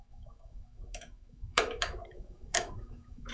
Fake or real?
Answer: fake